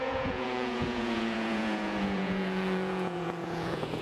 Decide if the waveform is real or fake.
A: fake